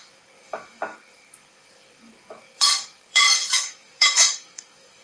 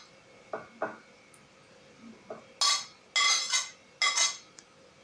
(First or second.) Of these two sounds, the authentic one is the second